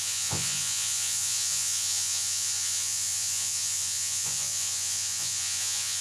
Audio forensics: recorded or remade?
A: remade